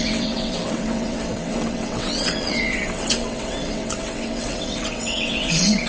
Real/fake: fake